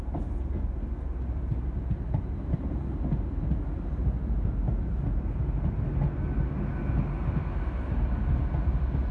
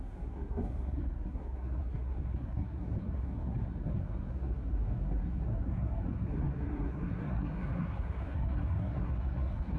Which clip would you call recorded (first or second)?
first